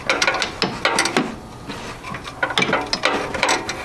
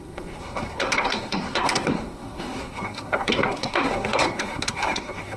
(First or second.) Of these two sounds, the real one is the first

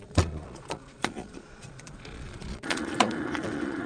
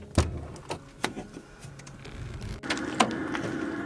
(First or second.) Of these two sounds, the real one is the second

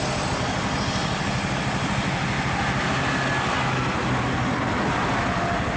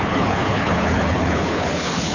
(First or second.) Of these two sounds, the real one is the first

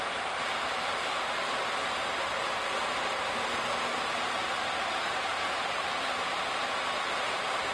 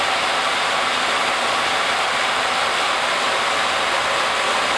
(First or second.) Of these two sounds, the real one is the second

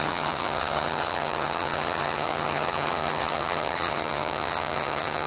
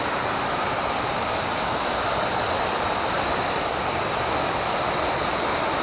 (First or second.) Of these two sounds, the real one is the second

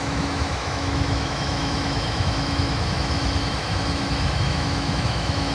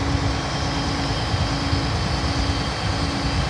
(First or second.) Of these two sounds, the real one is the second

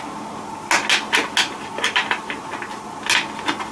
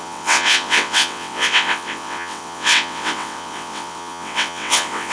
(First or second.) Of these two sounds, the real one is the first